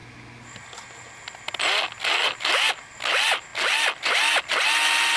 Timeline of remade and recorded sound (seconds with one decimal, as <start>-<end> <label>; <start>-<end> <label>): 0.0-5.2 recorded

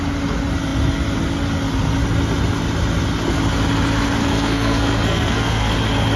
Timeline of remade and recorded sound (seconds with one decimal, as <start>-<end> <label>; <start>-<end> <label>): 0.0-4.2 recorded; 4.2-5.7 remade; 5.7-6.2 recorded

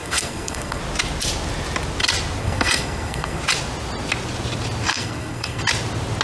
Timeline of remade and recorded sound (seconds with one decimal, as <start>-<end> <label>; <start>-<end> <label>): 0.0-0.8 remade; 0.8-2.4 recorded; 2.4-3.4 remade; 3.4-4.9 recorded; 4.9-5.6 remade; 5.6-6.2 recorded